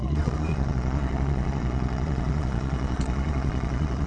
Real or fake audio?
fake